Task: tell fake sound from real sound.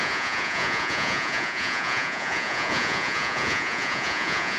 fake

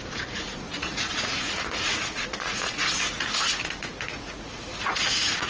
fake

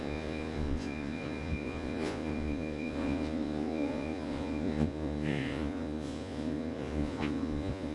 fake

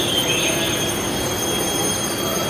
real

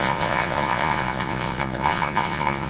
fake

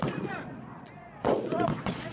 fake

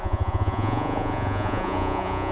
fake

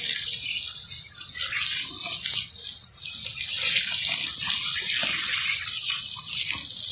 real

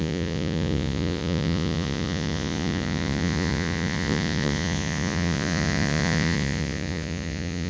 fake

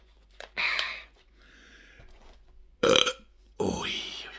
fake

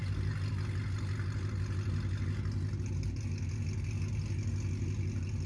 real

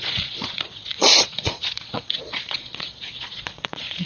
fake